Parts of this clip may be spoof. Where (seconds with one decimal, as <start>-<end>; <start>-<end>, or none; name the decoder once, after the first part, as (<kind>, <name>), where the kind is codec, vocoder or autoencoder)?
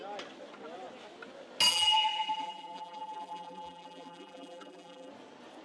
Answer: 1.7-5.1 (vocoder, BigVGAN v2)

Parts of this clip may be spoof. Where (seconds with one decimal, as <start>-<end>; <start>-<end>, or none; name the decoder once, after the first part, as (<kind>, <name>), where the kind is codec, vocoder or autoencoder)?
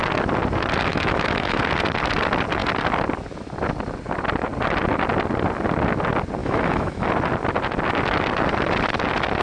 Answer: 0.9-1.6 (autoencoder, DAC-VAE); 6.4-7.1